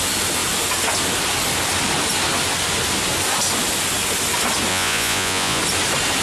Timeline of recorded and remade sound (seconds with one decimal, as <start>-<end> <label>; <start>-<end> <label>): 0.0-4.7 recorded; 4.7-5.6 remade; 5.6-6.2 recorded